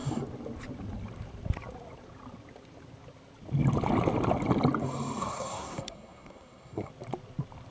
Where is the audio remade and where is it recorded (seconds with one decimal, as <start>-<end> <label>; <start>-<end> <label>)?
0.0-5.2 recorded; 5.2-6.9 remade; 6.9-7.7 recorded